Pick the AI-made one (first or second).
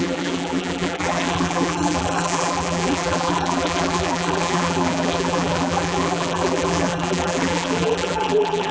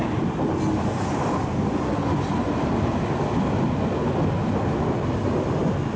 first